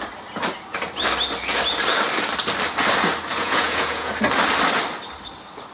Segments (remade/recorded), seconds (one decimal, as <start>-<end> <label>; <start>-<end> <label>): 0.0-3.3 recorded; 3.3-4.1 remade; 4.1-5.7 recorded